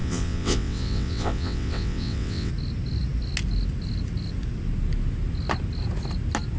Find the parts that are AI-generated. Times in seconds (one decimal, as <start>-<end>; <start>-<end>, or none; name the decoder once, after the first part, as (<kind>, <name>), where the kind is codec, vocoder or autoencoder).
0.0-2.5 (vocoder, WaveNeXt)